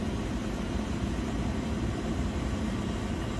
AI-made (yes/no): no